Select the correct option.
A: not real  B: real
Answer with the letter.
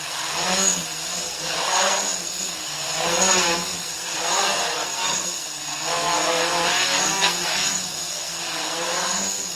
A